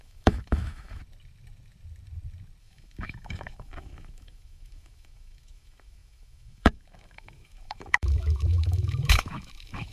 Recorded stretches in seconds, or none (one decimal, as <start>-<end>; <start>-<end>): 1.0-2.6